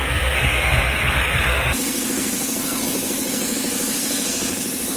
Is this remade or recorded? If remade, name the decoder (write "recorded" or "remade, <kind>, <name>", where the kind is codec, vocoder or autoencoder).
remade, codec, SNAC